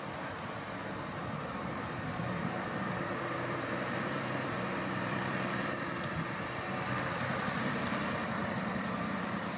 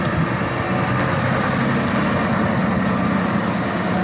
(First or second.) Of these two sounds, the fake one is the first